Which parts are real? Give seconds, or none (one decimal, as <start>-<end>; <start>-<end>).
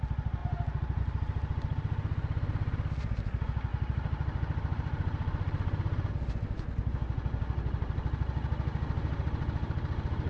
0.0-0.4; 1.0-3.7; 6.1-10.3